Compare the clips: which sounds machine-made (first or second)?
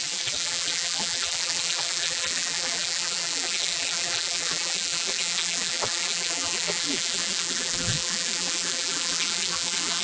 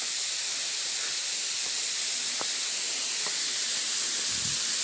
first